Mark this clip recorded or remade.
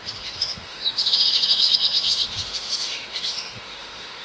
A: remade